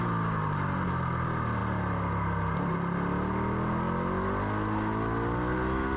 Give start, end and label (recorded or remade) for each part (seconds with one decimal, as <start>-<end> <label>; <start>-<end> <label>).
0.0-6.0 recorded